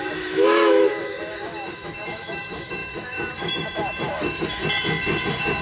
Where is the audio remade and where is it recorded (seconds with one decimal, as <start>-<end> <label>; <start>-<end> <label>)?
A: 0.0-4.6 remade; 4.6-5.6 recorded